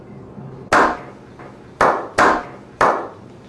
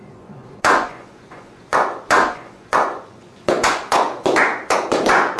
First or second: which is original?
first